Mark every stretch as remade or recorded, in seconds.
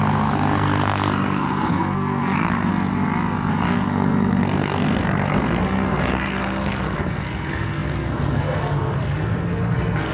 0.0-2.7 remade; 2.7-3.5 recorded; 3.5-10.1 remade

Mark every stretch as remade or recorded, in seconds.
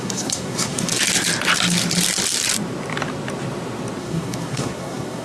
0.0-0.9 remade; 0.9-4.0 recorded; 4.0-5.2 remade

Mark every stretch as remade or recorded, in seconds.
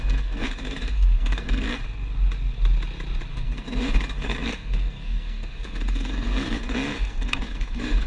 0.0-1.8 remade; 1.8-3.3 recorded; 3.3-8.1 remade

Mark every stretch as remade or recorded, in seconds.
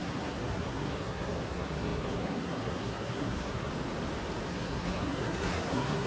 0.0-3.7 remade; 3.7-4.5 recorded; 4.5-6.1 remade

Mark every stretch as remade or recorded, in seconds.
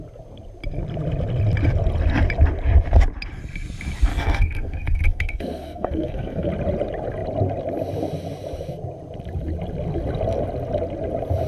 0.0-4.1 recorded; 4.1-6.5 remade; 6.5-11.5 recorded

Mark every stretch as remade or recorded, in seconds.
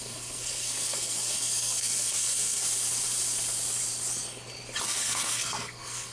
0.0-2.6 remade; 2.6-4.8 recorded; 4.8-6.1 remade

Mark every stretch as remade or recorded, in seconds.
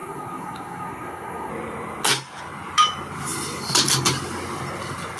0.0-1.5 remade; 1.5-5.2 recorded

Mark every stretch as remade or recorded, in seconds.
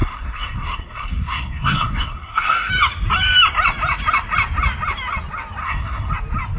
0.0-2.7 remade; 2.7-5.6 recorded; 5.6-6.1 remade; 6.1-6.6 recorded